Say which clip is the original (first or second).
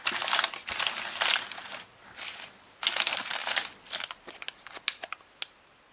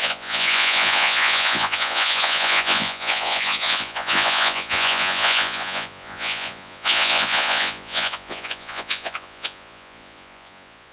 first